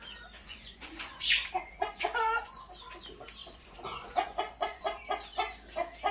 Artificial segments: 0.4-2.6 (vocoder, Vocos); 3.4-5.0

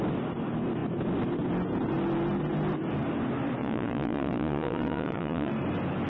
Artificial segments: 3.6-5.5 (vocoder, Vocos)

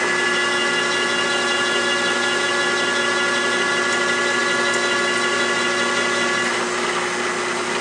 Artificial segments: none